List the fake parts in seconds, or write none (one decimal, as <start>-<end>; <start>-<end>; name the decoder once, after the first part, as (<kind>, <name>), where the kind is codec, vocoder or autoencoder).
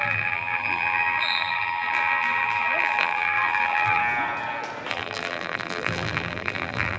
0.0-4.0 (vocoder, BigVGAN v2); 4.9-7.0